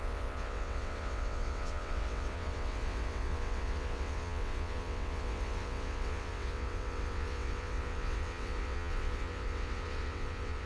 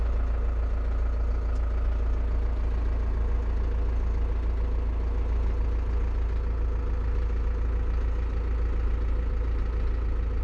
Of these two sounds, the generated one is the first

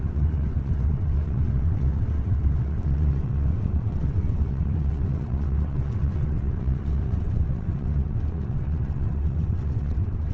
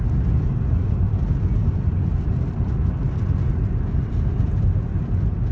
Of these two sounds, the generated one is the first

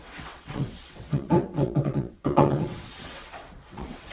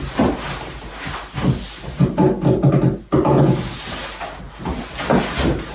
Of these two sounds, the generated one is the first